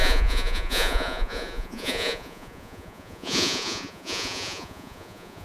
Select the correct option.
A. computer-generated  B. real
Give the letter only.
A